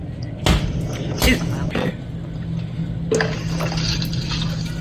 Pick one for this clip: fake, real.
real